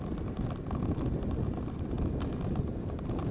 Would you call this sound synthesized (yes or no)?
no